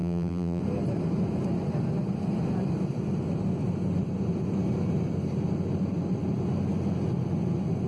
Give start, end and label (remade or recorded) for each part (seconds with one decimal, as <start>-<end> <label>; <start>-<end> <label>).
0.0-0.6 remade; 0.6-7.9 recorded